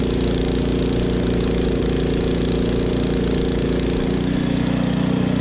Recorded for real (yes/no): yes